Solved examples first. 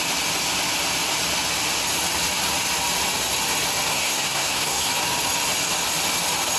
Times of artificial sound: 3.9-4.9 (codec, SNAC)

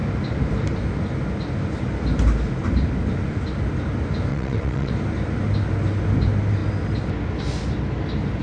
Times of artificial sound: 4.3-4.9 (vocoder, WaveNeXt)

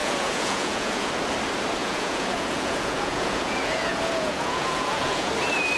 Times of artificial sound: 0.0-1.1 (vocoder, Vocos); 1.8-5.3

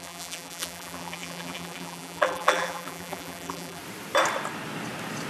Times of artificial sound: 0.0-3.8 (vocoder, BigVGAN v2)

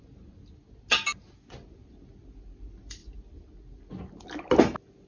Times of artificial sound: none